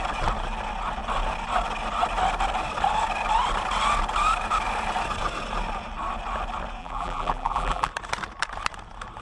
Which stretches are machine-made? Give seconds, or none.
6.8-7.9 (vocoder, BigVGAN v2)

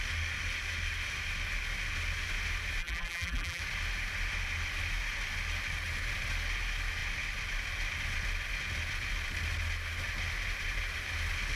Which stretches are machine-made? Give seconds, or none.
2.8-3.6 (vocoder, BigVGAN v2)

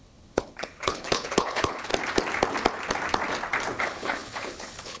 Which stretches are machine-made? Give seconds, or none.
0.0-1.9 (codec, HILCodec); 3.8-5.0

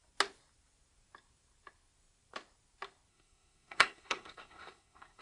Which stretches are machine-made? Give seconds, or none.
3.1-5.2 (codec, SNAC)

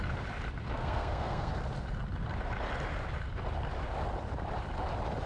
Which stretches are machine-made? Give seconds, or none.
0.8-1.5 (codec, SNAC)

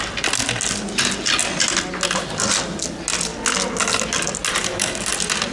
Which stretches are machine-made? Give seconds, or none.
4.6-5.1 (codec, DAC)